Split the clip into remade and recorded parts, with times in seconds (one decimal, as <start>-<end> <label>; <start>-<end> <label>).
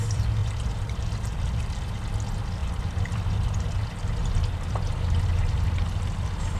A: 0.0-0.4 recorded; 0.4-2.1 remade; 2.1-2.6 recorded; 2.6-3.7 remade; 3.7-6.6 recorded